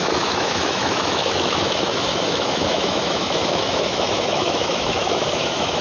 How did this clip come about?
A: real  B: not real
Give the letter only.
B